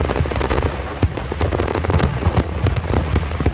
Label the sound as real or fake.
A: fake